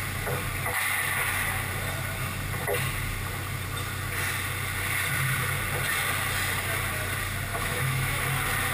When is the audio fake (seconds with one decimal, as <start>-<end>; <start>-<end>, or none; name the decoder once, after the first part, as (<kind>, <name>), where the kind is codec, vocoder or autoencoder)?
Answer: 7.5-8.2 (autoencoder, DAC-VAE)